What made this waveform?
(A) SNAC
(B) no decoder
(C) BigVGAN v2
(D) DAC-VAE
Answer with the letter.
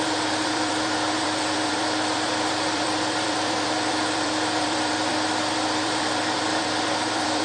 C